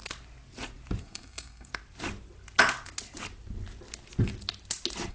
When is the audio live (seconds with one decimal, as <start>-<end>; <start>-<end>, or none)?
0.0-1.0; 1.7-5.1